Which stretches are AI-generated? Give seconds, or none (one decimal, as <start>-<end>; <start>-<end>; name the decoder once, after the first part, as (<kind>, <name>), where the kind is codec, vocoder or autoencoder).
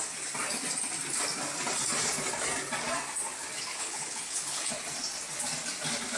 3.7-4.7 (codec, HILCodec)